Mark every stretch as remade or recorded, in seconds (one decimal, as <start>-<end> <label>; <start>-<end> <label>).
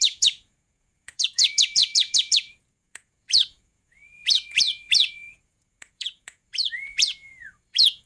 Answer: 0.0-8.1 remade